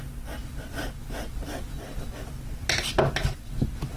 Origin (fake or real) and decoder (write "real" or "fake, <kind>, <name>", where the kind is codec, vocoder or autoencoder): real